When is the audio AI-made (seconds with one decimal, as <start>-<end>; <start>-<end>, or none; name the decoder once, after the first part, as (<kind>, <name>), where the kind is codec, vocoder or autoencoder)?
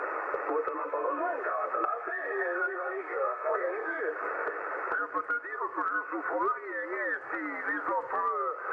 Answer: 0.8-4.0 (codec, SNAC)